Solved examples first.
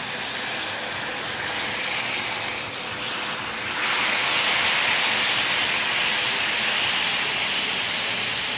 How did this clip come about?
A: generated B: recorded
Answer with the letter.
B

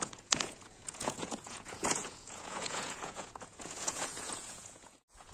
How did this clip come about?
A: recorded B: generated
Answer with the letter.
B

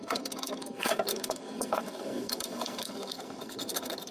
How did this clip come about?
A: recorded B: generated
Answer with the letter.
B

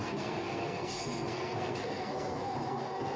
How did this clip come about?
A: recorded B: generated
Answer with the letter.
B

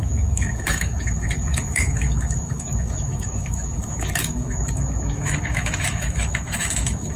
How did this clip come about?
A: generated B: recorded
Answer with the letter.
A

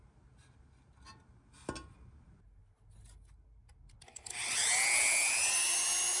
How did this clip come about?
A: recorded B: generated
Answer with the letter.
A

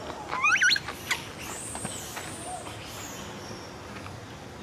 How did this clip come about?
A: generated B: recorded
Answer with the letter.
B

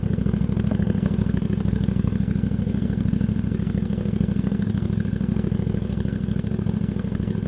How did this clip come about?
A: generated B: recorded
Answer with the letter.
A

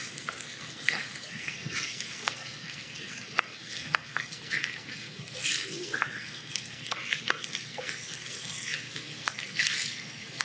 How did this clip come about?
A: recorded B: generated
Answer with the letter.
B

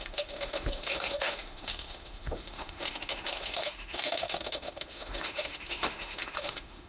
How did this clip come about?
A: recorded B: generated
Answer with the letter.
B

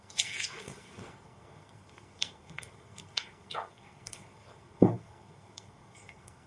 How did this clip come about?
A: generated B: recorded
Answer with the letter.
A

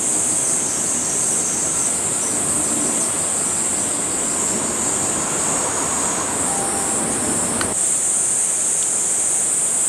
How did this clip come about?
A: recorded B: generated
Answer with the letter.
A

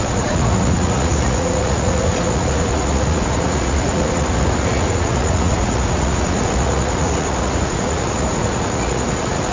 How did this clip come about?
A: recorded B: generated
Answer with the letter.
B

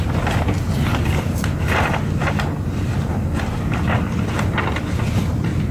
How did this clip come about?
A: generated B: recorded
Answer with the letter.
B